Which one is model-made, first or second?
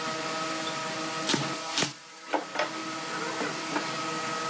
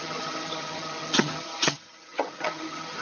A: second